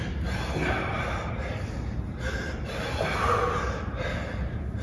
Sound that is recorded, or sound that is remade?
recorded